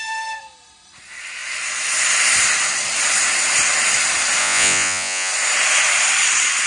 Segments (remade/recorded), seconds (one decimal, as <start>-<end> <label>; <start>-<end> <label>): 0.0-4.4 recorded; 4.4-5.3 remade; 5.3-6.7 recorded